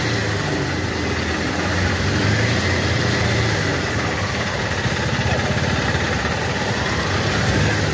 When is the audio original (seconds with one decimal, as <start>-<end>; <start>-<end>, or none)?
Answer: 0.0-3.7; 4.3-7.9